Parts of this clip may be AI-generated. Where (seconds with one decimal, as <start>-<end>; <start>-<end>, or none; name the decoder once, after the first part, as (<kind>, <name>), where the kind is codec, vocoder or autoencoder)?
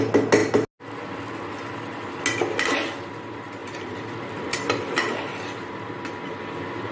3.6-5.6 (vocoder, BigVGAN v2)